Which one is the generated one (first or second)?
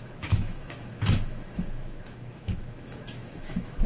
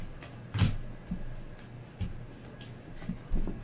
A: first